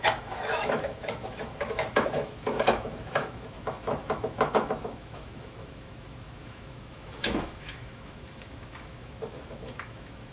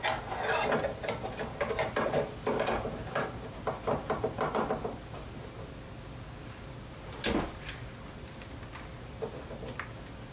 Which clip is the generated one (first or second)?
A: first